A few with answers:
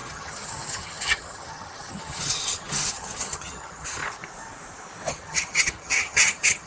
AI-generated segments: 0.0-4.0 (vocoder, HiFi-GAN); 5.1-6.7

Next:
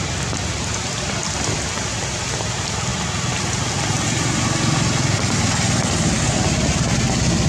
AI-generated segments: none